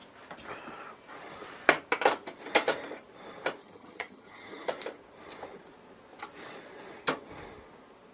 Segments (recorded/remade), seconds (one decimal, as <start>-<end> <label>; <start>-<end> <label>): 0.0-3.6 recorded; 3.6-4.7 remade; 4.7-8.1 recorded